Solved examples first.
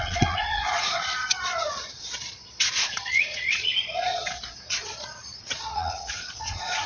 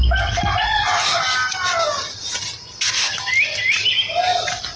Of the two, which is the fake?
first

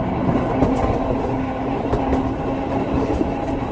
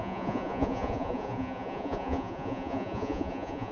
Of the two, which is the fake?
second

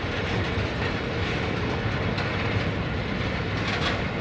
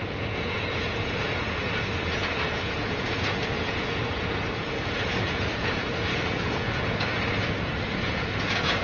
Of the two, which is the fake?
second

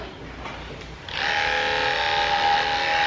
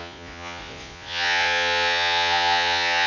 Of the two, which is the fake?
second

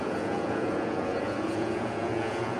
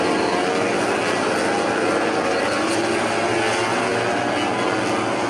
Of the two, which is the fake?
first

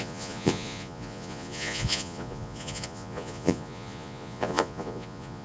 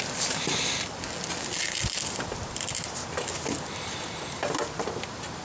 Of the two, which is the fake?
first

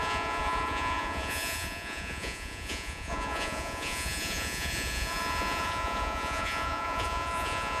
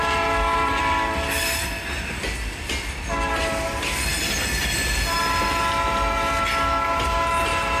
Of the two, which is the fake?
first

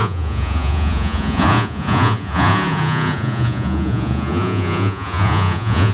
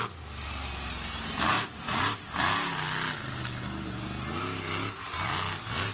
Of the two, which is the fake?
first